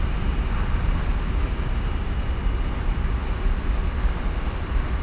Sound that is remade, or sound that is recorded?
recorded